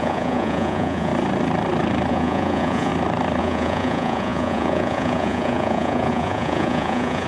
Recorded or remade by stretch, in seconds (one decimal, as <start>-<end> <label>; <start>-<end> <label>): 0.0-1.1 remade; 1.1-2.1 recorded; 2.1-2.9 remade; 2.9-3.4 recorded; 3.4-7.3 remade